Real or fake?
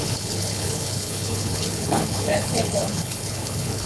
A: fake